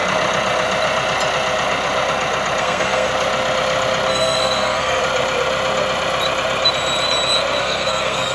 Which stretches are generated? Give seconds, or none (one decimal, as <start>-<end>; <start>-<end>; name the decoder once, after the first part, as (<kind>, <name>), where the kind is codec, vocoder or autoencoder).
2.6-3.1 (codec, SNAC); 4.1-5.0; 7.6-8.3